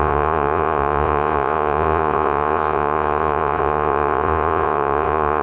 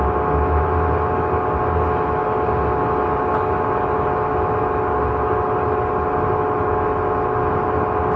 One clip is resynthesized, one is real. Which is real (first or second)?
second